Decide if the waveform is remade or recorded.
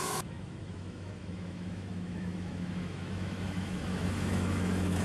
remade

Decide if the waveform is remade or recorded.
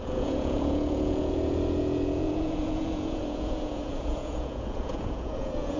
remade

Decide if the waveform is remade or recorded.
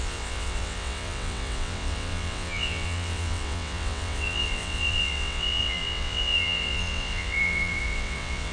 remade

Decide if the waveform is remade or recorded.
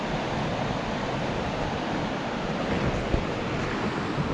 recorded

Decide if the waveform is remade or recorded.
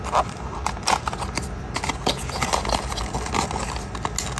recorded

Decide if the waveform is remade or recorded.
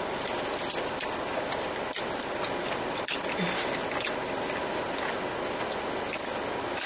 recorded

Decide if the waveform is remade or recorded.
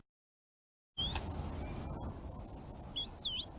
recorded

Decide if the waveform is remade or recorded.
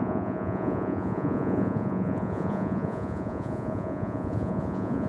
remade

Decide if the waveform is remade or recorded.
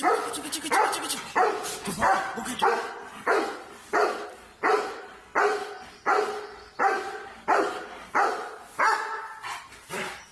recorded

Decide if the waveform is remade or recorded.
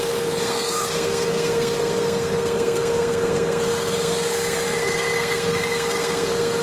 remade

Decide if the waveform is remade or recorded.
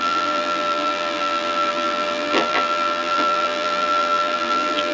remade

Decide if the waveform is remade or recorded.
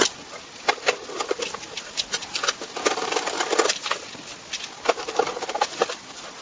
recorded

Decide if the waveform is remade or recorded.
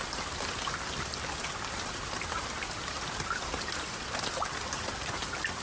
recorded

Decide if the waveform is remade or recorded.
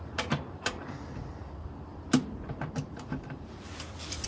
remade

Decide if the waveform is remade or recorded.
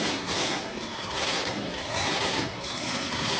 remade